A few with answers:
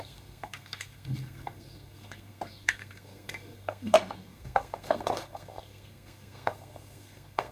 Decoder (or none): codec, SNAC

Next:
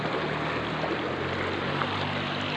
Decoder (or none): none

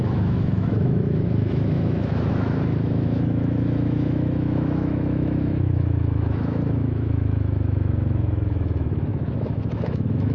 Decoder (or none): autoencoder, DAC-VAE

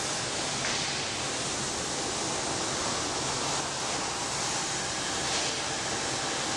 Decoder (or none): none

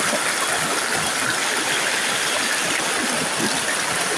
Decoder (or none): vocoder, BigVGAN v2